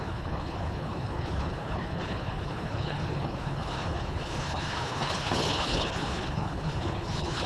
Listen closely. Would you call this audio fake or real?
fake